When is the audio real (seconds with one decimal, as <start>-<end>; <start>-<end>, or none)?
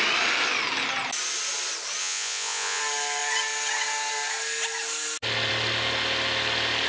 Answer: 0.0-2.0; 2.8-6.9